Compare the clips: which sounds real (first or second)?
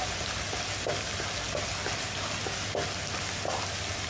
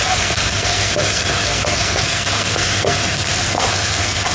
first